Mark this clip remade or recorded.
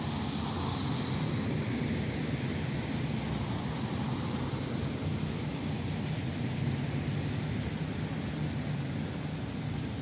recorded